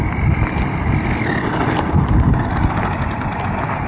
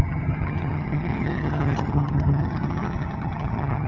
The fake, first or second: second